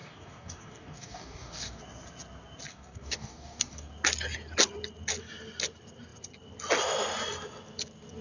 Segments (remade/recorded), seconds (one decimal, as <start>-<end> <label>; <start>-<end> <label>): 0.0-1.8 remade; 1.8-2.7 recorded; 2.7-3.9 remade; 3.9-8.2 recorded